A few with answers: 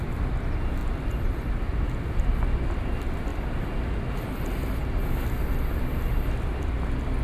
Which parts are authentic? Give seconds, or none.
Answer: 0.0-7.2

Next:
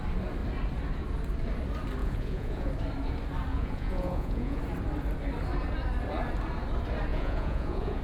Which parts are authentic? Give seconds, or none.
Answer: 0.0-2.0; 2.7-3.5; 4.6-7.1

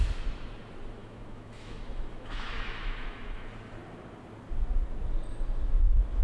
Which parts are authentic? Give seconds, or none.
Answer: 0.0-1.0; 3.5-6.2

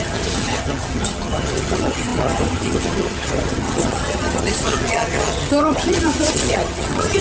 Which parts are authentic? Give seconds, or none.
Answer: none

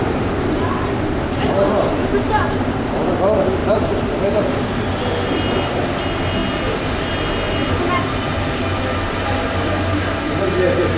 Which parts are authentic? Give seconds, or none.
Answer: 0.0-11.0

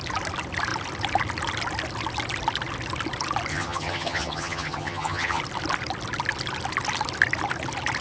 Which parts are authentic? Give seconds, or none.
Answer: 0.0-3.5; 5.4-8.0

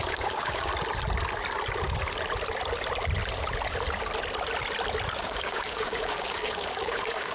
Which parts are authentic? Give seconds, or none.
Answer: 0.7-5.1